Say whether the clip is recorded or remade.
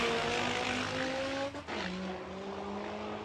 recorded